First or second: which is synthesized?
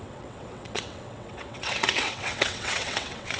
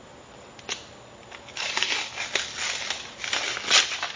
first